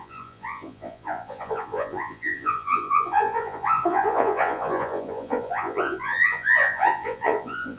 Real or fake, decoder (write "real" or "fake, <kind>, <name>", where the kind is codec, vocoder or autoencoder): fake, vocoder, Vocos